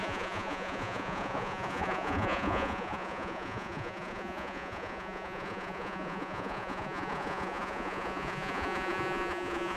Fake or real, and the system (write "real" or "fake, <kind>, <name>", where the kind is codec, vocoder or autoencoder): fake, vocoder, Vocos